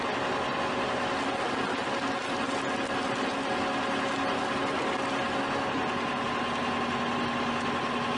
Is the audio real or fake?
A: real